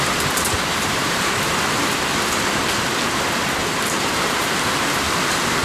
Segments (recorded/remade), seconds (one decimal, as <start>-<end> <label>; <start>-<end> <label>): 0.0-0.7 recorded; 0.7-1.5 remade; 1.5-3.6 recorded; 3.6-5.0 remade; 5.0-5.6 recorded